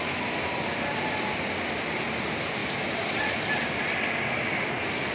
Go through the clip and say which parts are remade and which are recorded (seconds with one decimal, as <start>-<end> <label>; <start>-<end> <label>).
0.0-5.1 recorded